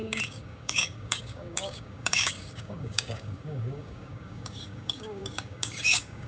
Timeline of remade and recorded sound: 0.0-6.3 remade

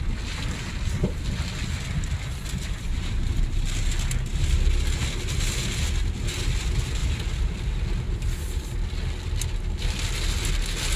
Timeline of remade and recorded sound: 0.0-11.0 recorded

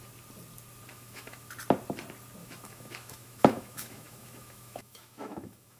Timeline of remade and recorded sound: 0.0-0.9 recorded; 0.9-1.5 remade; 1.5-2.4 recorded; 2.4-5.8 remade

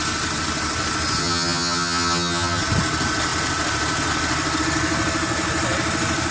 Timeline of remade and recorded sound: 0.0-1.2 recorded; 1.2-2.6 remade; 2.6-6.3 recorded

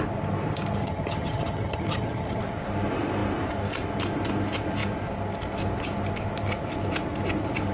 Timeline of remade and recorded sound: 0.0-0.8 recorded; 0.8-2.4 remade; 2.4-7.7 recorded